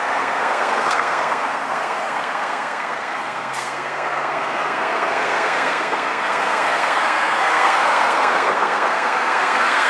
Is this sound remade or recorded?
remade